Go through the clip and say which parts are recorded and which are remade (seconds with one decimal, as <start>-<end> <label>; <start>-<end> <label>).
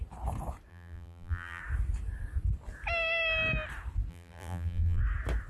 0.0-0.7 recorded; 0.7-1.6 remade; 1.6-4.1 recorded; 4.1-5.0 remade; 5.0-5.5 recorded